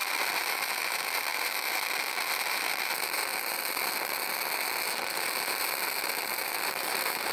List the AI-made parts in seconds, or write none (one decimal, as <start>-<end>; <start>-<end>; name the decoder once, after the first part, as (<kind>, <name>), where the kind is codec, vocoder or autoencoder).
0.0-3.3 (vocoder, BigVGAN v2); 5.2-7.3